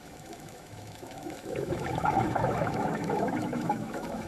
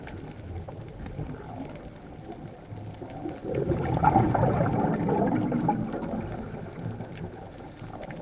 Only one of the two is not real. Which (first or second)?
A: first